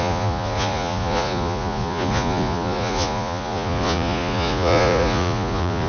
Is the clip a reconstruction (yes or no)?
yes